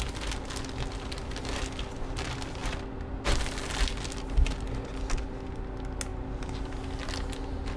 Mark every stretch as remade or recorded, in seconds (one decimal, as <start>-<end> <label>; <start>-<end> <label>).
0.0-7.8 recorded